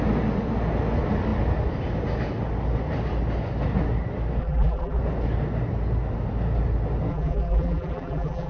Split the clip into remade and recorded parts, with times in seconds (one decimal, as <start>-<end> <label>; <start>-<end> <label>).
0.0-4.4 recorded; 4.4-5.0 remade; 5.0-7.1 recorded; 7.1-8.5 remade